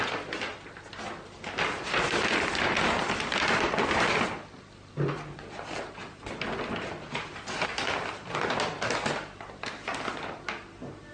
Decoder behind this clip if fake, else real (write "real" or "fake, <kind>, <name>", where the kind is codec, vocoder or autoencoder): real